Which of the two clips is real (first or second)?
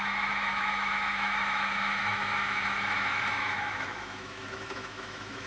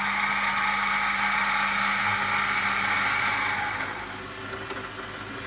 second